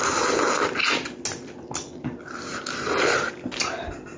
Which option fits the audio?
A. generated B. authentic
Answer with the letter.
B